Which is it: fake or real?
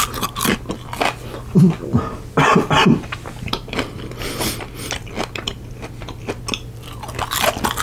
real